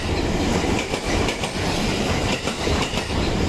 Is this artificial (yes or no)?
yes